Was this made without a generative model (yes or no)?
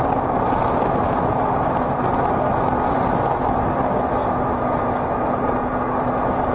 yes